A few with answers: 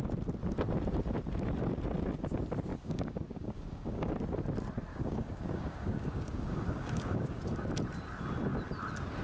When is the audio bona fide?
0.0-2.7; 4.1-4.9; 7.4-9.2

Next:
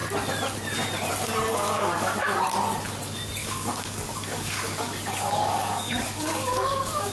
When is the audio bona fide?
0.0-1.5; 2.4-3.4